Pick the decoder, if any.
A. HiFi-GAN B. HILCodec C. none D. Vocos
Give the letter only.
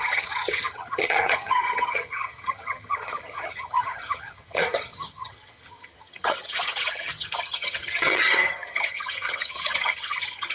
A